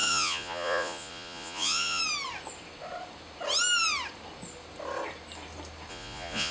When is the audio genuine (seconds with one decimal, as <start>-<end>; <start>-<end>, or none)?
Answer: 2.0-5.9